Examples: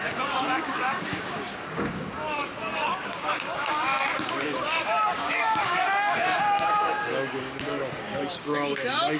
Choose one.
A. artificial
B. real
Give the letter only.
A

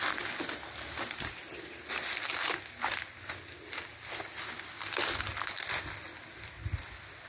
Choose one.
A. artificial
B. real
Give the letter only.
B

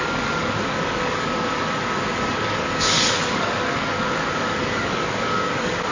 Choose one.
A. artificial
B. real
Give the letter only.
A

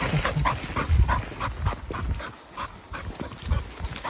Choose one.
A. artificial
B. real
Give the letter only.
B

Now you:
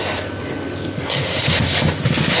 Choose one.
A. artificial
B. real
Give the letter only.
B